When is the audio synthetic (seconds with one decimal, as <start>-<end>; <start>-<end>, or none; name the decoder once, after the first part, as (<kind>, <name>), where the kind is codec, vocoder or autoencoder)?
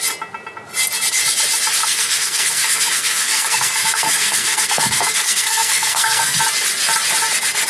1.8-6.4 (codec, SNAC)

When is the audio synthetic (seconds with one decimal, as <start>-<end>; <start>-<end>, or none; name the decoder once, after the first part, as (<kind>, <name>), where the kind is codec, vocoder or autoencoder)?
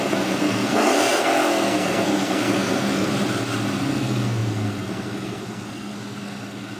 0.0-3.1 (codec, SNAC); 3.8-6.8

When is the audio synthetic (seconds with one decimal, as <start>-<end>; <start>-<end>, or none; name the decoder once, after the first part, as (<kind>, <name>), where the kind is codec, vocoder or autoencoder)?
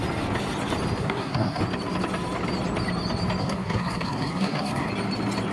1.0-1.6 (codec, SNAC); 3.4-4.9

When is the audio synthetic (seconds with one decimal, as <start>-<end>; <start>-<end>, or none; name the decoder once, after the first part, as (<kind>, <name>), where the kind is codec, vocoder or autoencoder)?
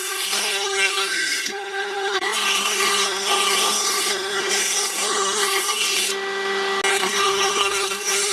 0.0-6.1 (codec, SNAC); 6.9-8.3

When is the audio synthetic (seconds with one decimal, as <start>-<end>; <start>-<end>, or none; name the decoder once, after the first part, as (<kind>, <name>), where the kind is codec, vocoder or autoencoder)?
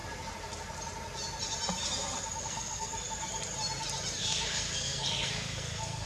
2.4-2.9 (codec, SNAC); 4.2-6.1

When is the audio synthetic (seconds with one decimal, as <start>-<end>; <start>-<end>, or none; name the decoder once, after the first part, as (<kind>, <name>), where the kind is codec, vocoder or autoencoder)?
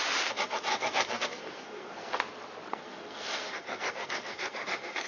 0.7-2.2 (codec, SNAC); 2.7-5.1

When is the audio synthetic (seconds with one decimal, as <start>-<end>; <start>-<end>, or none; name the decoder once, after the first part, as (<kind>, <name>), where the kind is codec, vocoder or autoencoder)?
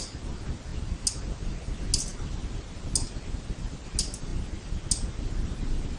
none